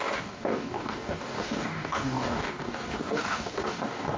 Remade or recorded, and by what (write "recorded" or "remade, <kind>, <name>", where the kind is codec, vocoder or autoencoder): remade, codec, DAC